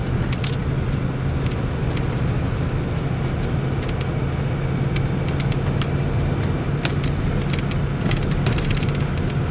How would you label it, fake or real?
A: real